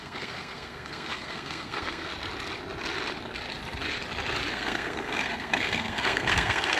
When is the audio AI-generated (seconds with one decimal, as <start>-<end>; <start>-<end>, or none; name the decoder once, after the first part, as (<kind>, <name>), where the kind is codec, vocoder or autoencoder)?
0.0-2.1 (codec, SNAC); 4.5-6.8